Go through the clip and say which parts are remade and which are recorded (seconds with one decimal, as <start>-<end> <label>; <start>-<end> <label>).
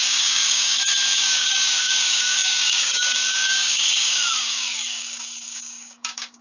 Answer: 0.0-6.4 remade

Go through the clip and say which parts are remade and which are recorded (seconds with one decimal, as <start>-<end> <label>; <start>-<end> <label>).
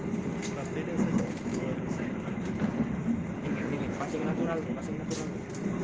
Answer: 0.0-1.5 recorded; 1.5-5.0 remade; 5.0-5.8 recorded